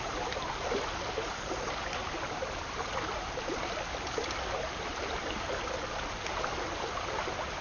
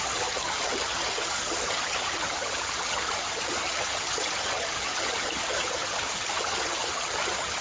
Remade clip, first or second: second